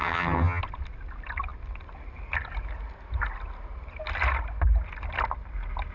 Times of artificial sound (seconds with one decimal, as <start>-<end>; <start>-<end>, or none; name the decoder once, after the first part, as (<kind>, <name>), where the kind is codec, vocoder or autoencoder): 0.0-0.6 (vocoder, HiFi-GAN)